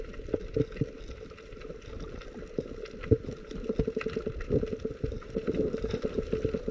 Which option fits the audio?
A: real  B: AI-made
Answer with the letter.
A